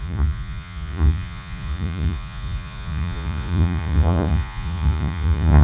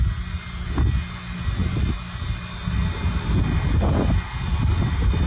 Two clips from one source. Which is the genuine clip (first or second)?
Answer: second